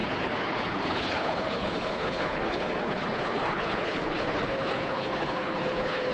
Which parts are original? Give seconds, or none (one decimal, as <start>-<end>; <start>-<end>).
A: none